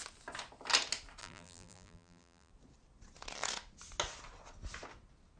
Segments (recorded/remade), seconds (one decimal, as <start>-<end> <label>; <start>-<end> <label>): 0.0-1.2 recorded; 1.2-2.5 remade; 2.5-5.4 recorded